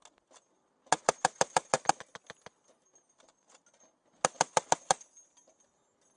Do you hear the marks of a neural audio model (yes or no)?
no